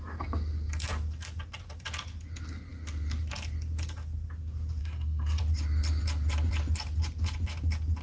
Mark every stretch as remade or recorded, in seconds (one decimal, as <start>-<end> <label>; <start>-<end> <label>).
0.0-4.8 recorded; 4.8-5.4 remade; 5.4-8.0 recorded